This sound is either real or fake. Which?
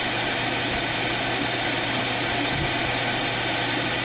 real